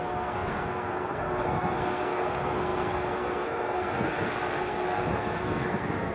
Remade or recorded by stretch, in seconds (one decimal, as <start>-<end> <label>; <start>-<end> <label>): 0.0-6.1 remade